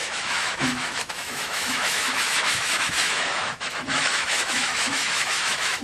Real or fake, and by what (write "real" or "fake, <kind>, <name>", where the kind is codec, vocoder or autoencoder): fake, autoencoder, DAC-VAE